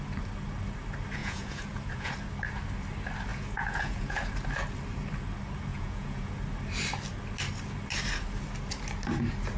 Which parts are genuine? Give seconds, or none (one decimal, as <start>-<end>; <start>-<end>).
0.0-1.2; 2.1-3.3; 4.2-5.7; 6.3-9.6